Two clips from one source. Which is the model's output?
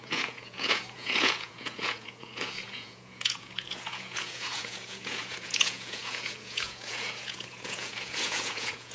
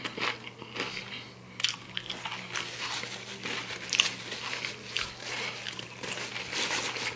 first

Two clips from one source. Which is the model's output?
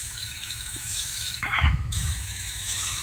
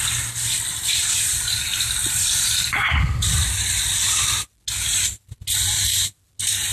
first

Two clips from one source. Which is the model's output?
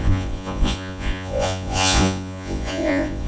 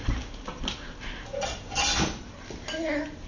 first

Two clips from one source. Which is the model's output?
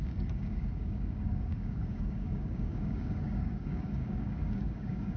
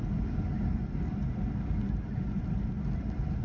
first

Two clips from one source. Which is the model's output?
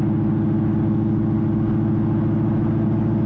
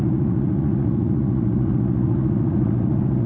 second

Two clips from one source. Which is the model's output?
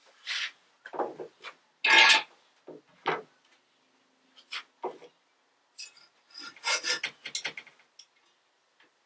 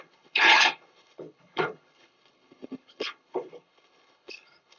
second